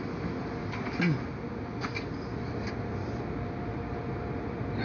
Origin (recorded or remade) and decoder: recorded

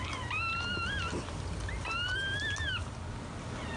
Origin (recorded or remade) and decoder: recorded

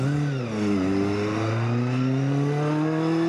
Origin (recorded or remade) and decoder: recorded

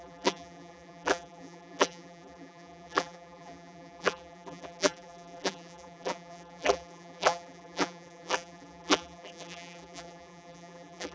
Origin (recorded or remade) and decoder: remade, vocoder, BigVGAN v2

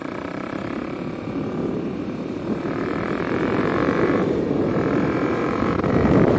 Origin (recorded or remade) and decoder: remade, vocoder, BigVGAN v2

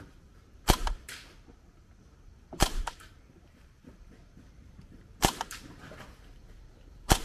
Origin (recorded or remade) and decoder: remade, vocoder, BigVGAN v2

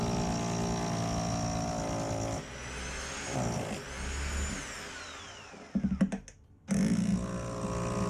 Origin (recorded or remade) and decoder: recorded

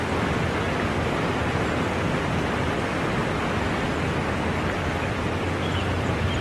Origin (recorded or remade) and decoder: remade, vocoder, BigVGAN v2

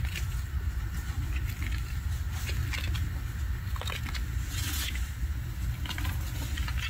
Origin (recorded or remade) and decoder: recorded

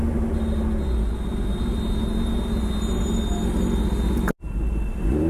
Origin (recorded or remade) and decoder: recorded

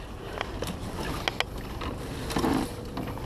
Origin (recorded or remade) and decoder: recorded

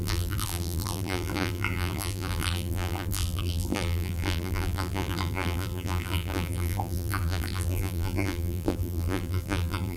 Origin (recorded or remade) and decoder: remade, vocoder, BigVGAN v2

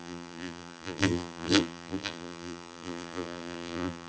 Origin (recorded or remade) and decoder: remade, vocoder, BigVGAN v2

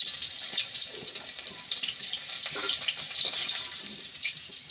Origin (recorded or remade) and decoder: remade, vocoder, BigVGAN v2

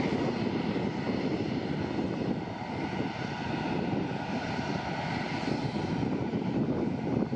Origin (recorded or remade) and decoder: recorded